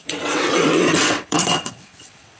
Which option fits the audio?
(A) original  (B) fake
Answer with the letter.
B